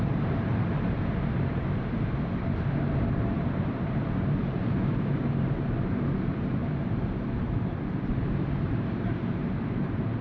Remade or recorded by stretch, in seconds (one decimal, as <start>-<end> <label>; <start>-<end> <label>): 0.0-10.2 remade

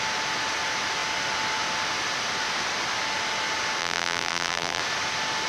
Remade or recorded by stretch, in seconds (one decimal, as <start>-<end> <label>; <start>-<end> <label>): 0.0-3.8 recorded; 3.8-4.8 remade; 4.8-5.5 recorded

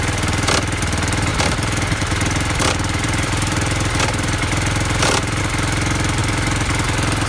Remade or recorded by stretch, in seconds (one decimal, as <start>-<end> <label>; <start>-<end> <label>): 0.0-1.3 recorded; 1.3-5.4 remade; 5.4-7.3 recorded

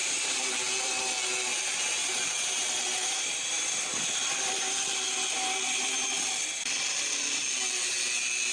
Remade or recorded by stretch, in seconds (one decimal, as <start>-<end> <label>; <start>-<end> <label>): 0.0-0.5 remade; 0.5-8.5 recorded

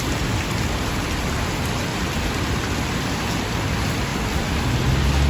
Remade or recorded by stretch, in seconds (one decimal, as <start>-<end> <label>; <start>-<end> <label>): 0.0-1.9 recorded; 1.9-3.1 remade; 3.1-4.1 recorded; 4.1-4.7 remade; 4.7-5.3 recorded

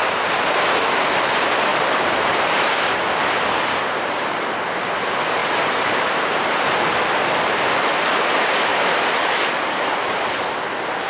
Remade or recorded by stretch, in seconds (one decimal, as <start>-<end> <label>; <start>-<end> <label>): 0.0-1.7 recorded; 1.7-3.1 remade; 3.1-5.4 recorded; 5.4-6.7 remade; 6.7-8.7 recorded; 8.7-10.2 remade; 10.2-11.1 recorded

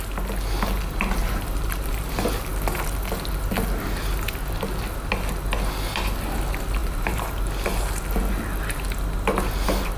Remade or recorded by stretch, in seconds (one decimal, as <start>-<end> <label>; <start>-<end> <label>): 0.0-1.2 recorded; 1.2-2.1 remade; 2.1-6.8 recorded; 6.8-7.4 remade; 7.4-10.0 recorded